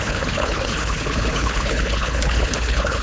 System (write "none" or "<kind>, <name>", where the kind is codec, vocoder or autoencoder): codec, HILCodec